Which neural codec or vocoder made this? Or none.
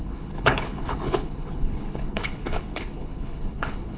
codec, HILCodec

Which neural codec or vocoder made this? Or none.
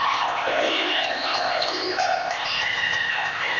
codec, ZipCodec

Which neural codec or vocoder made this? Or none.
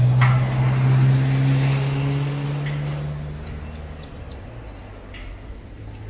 none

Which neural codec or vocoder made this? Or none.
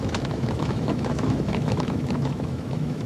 autoencoder, DAC-VAE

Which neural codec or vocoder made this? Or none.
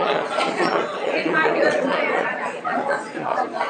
vocoder, Vocos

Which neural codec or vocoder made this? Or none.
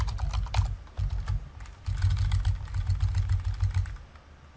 none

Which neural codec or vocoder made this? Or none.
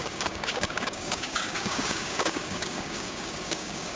codec, DAC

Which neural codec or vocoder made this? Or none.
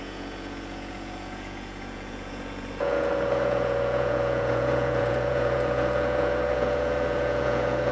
vocoder, Vocos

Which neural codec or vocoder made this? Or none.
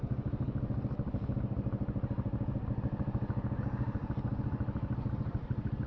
none